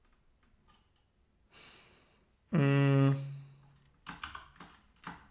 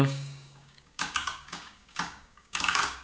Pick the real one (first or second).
first